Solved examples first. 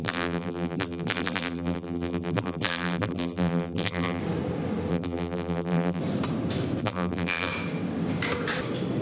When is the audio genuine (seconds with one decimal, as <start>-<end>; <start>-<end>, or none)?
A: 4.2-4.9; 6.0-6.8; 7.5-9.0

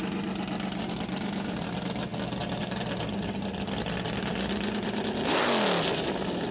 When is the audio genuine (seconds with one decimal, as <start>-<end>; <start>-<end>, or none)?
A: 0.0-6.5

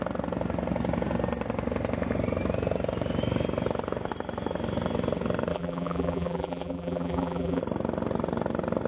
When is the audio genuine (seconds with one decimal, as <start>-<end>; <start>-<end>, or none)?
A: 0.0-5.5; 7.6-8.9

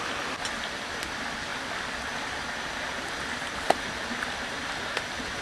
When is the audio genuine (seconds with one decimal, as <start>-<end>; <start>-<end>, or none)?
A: 0.0-5.4

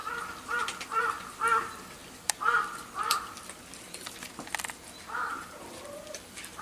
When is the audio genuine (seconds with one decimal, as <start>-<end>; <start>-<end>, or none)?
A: none

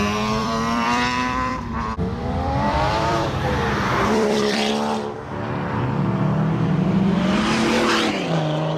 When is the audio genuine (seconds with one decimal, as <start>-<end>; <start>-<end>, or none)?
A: 0.0-0.4; 4.7-8.8

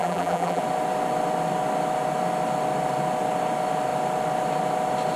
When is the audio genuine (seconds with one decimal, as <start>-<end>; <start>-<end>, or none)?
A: 0.6-5.2

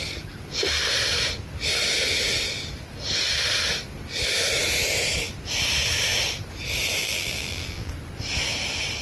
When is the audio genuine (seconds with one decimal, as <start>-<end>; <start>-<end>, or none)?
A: 0.0-7.0; 7.9-9.0